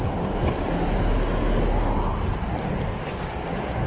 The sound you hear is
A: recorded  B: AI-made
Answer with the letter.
A